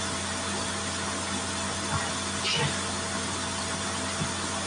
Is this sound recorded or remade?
recorded